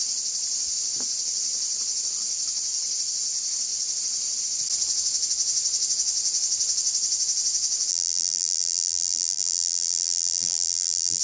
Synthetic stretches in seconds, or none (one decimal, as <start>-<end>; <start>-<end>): 7.9-11.2

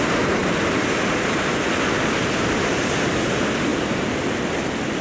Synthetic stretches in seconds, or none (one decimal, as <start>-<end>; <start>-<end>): none

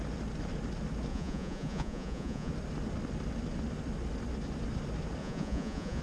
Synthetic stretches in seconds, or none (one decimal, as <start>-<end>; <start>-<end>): 1.1-2.5; 5.2-6.0

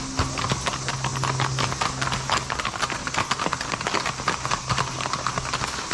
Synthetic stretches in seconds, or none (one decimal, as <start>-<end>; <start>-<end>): none

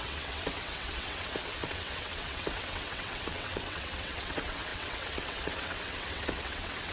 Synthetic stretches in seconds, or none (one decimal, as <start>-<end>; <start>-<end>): 0.0-6.9

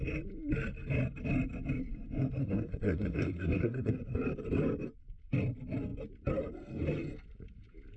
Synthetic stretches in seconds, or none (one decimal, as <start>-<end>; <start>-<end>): 2.4-3.9

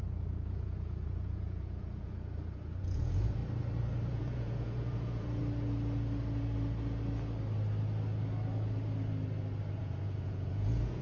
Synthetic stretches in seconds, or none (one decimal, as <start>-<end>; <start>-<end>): 0.0-3.4; 4.1-5.4; 9.8-11.0

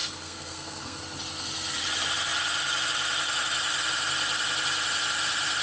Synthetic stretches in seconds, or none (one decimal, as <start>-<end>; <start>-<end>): 0.0-1.0